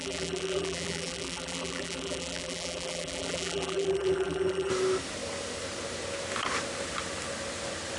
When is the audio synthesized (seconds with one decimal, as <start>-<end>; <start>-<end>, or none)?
0.0-4.7